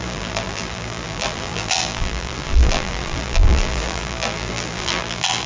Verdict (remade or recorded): remade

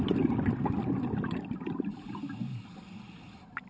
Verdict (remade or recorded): recorded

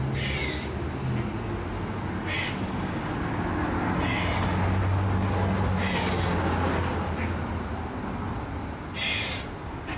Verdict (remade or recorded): recorded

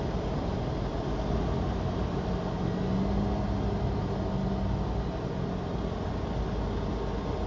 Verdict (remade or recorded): recorded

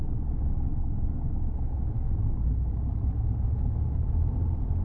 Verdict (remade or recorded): recorded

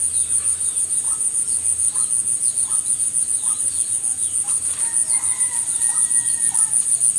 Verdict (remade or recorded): recorded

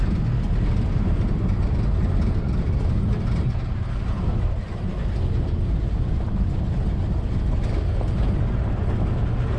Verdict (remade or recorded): recorded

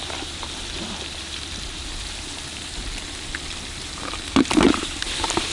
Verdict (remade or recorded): remade